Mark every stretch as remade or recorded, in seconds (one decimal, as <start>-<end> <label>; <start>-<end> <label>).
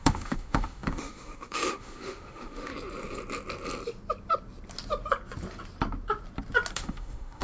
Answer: 0.0-2.7 remade; 2.7-6.7 recorded; 6.7-7.4 remade